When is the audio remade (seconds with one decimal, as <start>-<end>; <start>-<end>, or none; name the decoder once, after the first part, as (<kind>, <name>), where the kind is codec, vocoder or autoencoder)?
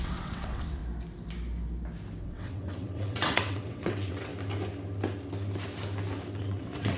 0.0-0.8 (vocoder, WaveNeXt); 2.2-4.3; 6.4-7.0